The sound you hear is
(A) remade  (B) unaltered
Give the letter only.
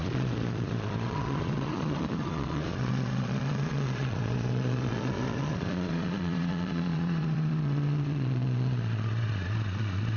A